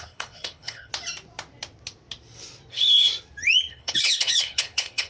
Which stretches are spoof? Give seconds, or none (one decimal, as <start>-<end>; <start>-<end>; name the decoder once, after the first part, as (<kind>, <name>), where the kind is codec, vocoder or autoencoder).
0.0-0.9 (codec, HILCodec); 2.7-3.1; 3.7-5.1